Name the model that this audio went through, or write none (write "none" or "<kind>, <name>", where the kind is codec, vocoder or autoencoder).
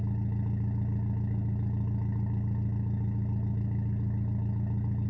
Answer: none